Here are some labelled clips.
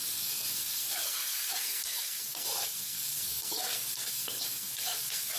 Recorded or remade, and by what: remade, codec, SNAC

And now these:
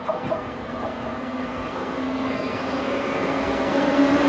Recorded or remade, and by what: remade, codec, SNAC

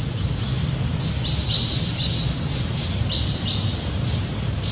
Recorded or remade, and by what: recorded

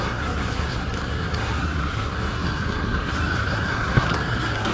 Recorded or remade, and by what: remade, codec, SNAC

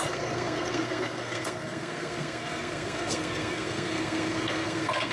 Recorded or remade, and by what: remade, codec, SNAC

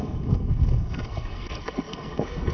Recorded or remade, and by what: remade, codec, SNAC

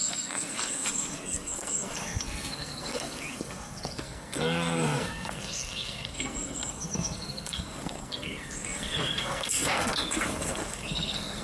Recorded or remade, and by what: remade, codec, SNAC